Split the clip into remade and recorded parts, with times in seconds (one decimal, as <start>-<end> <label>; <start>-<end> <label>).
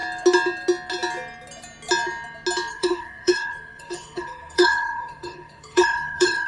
0.0-2.7 recorded; 2.7-6.5 remade